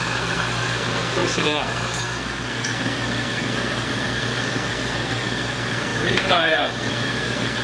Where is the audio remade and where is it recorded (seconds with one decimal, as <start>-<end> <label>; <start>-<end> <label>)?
0.0-7.6 remade